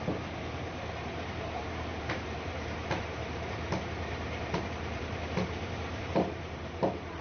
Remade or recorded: remade